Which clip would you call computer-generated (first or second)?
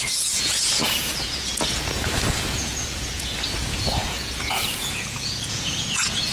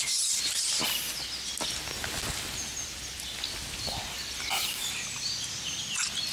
first